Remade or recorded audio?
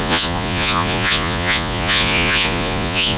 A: remade